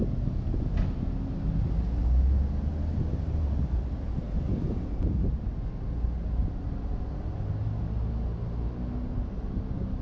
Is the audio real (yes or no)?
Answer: yes